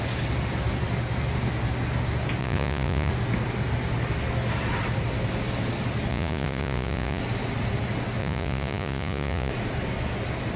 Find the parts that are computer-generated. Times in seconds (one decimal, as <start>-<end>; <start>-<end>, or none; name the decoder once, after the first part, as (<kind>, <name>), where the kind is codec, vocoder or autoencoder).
2.4-3.1 (vocoder, Vocos); 6.1-7.2; 8.2-9.5